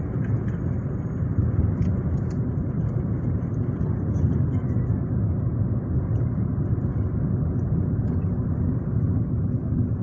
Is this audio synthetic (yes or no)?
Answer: no